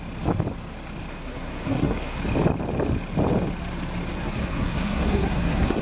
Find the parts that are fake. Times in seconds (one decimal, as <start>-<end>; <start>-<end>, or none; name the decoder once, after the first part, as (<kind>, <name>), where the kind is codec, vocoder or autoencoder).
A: 1.1-2.2 (codec, SNAC); 4.1-5.8